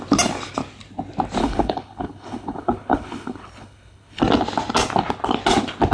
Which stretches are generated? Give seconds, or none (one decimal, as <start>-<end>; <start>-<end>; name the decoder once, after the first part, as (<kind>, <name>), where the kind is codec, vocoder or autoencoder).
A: 1.4-4.2 (codec, HILCodec)